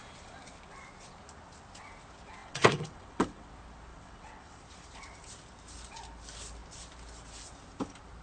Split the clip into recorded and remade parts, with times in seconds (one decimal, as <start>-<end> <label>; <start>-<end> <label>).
0.0-2.4 recorded; 2.4-3.5 remade; 3.5-3.9 recorded; 3.9-4.6 remade; 4.6-8.2 recorded